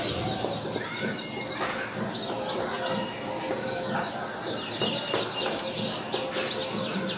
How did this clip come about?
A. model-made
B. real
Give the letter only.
B